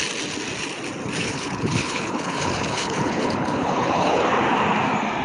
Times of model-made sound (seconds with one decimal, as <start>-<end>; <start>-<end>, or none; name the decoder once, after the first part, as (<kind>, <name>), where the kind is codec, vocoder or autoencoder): 1.2-4.2 (codec, HILCodec)